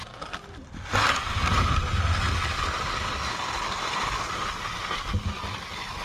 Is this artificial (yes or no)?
no